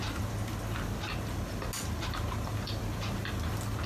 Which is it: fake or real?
real